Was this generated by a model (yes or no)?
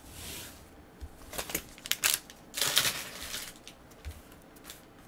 no